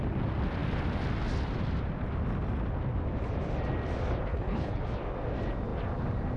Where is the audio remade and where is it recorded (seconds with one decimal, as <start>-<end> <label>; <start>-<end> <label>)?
0.0-4.3 recorded; 4.3-4.8 remade; 4.8-6.4 recorded